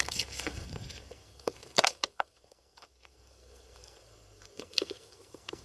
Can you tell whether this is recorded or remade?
remade